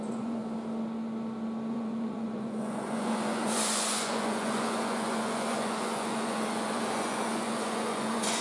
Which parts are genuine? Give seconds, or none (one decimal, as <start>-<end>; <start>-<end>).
0.4-1.7